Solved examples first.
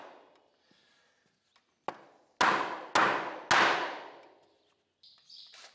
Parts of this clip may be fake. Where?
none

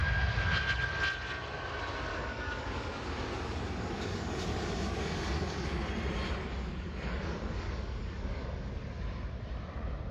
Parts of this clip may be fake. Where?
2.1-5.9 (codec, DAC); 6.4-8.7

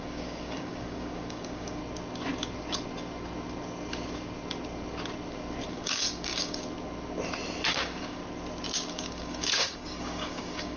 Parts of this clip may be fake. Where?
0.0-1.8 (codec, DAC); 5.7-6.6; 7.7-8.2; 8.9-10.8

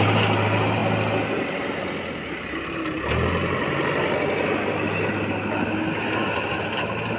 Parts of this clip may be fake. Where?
none

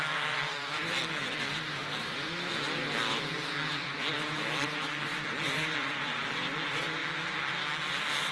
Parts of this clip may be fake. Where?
0.0-7.0 (vocoder, BigVGAN v2)